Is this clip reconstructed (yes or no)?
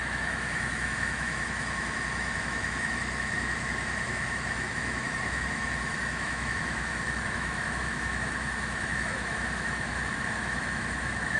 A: yes